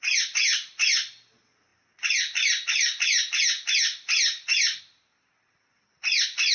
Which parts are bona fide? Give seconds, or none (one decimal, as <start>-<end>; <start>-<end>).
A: 0.0-6.5